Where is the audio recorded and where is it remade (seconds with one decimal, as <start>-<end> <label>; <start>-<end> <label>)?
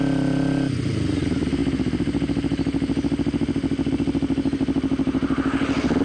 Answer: 0.0-6.0 recorded